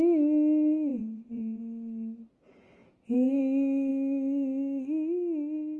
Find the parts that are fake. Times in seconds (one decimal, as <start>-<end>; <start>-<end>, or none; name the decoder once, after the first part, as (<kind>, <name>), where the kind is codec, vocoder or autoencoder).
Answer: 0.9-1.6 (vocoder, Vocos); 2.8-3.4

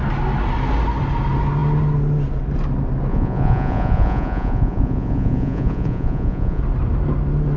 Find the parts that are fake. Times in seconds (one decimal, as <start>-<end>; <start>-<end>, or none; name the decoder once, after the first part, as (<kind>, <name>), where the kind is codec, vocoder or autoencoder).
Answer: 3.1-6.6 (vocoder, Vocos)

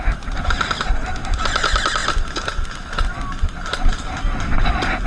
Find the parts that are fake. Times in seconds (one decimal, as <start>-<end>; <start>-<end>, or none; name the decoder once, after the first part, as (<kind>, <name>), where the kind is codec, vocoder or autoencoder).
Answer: none

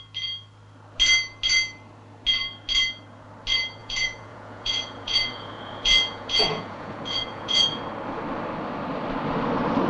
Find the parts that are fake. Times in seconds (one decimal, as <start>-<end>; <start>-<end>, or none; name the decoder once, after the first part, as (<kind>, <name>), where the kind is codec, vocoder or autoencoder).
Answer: 3.8-7.8 (vocoder, Vocos)

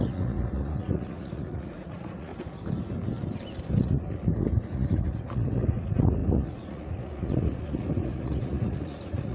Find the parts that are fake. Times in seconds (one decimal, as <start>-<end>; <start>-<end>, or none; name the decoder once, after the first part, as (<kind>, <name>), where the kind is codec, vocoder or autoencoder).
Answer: 0.0-2.3 (vocoder, Vocos); 3.8-9.3

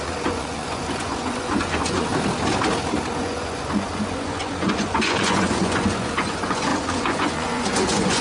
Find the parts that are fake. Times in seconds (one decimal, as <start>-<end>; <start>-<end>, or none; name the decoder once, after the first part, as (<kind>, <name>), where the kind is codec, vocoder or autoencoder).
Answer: 0.0-2.1 (vocoder, Vocos); 3.2-8.2

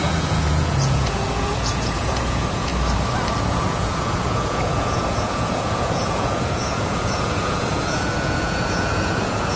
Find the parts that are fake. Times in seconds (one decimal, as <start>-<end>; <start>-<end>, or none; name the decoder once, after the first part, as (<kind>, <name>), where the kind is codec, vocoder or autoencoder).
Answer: 0.0-2.7 (vocoder, Vocos); 3.4-9.6